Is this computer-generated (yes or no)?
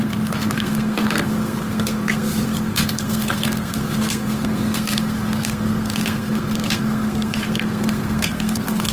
yes